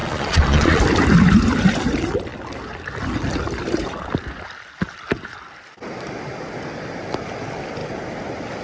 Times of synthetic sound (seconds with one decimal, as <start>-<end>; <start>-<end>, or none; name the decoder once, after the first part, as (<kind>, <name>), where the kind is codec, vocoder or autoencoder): 0.0-0.8 (vocoder, Vocos)